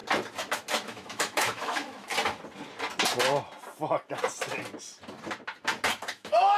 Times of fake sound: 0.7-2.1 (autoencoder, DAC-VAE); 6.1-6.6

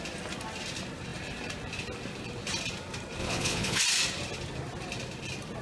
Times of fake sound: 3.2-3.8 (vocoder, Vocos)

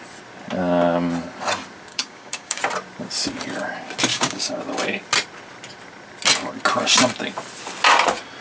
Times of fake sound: 1.9-2.6 (codec, DAC); 4.1-4.6

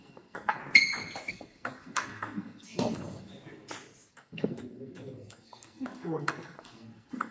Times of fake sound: 0.0-0.6 (codec, SNAC); 1.3-3.3; 4.1-7.3

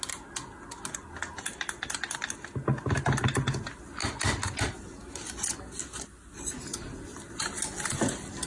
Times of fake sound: none